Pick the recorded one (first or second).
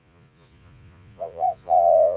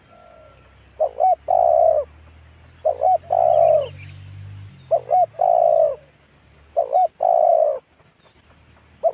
second